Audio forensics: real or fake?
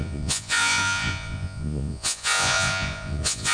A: fake